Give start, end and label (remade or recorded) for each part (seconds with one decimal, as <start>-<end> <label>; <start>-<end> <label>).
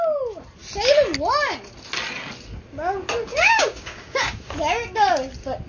0.0-3.3 recorded; 3.3-4.4 remade; 4.4-5.7 recorded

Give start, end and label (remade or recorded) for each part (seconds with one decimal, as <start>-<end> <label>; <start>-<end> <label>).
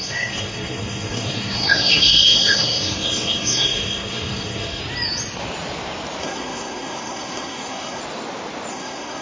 0.0-4.8 remade; 4.8-6.2 recorded; 6.2-8.0 remade; 8.0-8.7 recorded; 8.7-9.2 remade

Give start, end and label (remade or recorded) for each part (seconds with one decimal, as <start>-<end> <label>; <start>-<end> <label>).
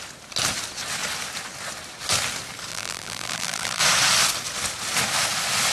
0.0-2.7 recorded; 2.7-3.8 remade; 3.8-5.7 recorded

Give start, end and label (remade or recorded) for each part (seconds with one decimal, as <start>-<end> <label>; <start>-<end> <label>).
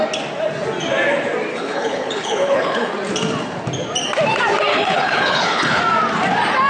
0.0-1.5 recorded; 1.5-2.9 remade; 2.9-4.7 recorded; 4.7-5.8 remade; 5.8-6.7 recorded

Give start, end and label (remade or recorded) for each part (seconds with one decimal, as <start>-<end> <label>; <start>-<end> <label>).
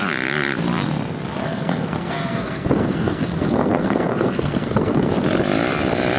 0.0-1.4 recorded; 1.4-5.1 remade; 5.1-6.2 recorded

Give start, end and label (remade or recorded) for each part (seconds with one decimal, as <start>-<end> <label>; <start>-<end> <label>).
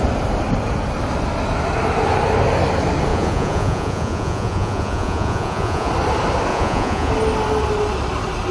0.0-3.1 recorded; 3.1-5.9 remade; 5.9-6.5 recorded; 6.5-7.1 remade; 7.1-8.5 recorded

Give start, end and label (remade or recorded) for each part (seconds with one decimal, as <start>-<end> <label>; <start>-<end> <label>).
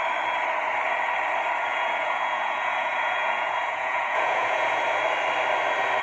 0.0-1.7 recorded; 1.7-4.8 remade; 4.8-6.0 recorded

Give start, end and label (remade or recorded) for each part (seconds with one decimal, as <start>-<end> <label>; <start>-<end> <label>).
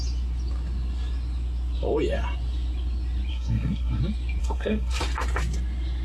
0.0-3.3 recorded; 3.3-4.0 remade; 4.0-4.4 recorded; 4.4-5.0 remade; 5.0-6.0 recorded